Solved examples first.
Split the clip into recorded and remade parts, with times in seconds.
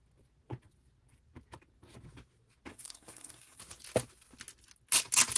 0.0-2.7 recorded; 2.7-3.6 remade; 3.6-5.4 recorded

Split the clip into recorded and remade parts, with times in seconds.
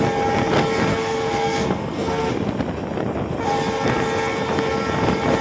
0.0-0.9 recorded; 0.9-2.3 remade; 2.3-5.4 recorded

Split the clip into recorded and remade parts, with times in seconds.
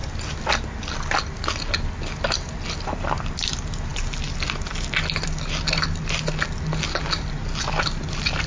0.0-8.5 recorded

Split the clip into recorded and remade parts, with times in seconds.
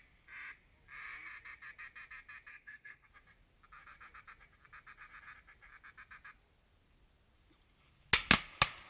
0.0-2.5 recorded; 2.5-3.1 remade; 3.1-8.9 recorded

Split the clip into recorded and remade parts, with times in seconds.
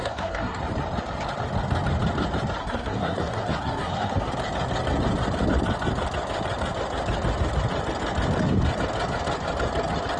0.0-0.6 remade; 0.6-2.6 recorded; 2.6-4.3 remade; 4.3-10.2 recorded